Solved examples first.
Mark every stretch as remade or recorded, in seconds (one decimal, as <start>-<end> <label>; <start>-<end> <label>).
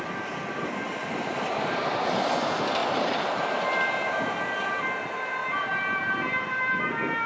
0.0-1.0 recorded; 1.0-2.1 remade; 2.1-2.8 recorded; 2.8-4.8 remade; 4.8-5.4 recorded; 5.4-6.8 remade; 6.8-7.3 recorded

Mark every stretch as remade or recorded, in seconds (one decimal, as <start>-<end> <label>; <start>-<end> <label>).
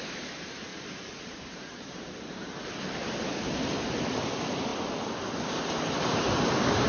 0.0-0.7 recorded; 0.7-2.0 remade; 2.0-6.9 recorded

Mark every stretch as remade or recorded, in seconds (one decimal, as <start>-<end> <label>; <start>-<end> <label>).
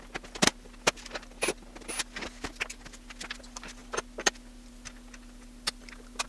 0.0-6.3 recorded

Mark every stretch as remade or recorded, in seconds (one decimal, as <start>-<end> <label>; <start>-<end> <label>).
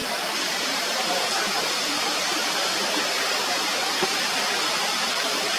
0.0-1.4 remade; 1.4-5.6 recorded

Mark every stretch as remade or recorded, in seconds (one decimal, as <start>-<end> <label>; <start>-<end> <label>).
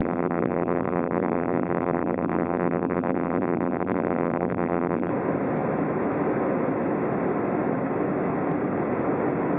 0.0-5.1 remade; 5.1-9.6 recorded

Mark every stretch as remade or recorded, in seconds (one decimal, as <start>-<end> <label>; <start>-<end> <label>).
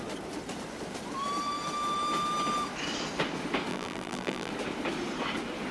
0.0-3.7 recorded; 3.7-4.5 remade; 4.5-5.7 recorded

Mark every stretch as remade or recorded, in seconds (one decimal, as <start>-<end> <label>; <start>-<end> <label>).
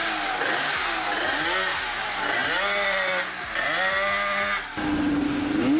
0.0-5.8 recorded